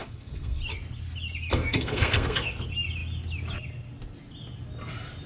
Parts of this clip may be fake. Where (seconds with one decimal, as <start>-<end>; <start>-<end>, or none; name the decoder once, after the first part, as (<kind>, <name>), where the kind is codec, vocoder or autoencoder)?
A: 0.0-0.6 (codec, SNAC); 1.5-2.6